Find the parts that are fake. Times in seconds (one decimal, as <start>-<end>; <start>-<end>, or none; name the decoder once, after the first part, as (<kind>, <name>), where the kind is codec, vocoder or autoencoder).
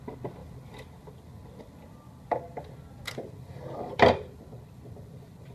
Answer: none